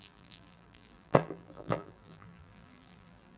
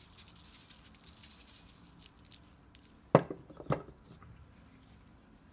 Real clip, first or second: second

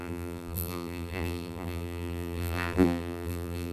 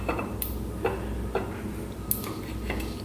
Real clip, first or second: second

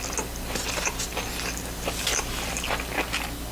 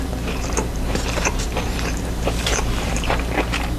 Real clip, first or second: first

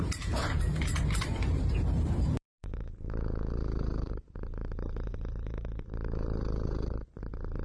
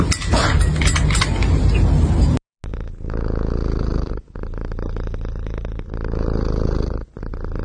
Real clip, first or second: second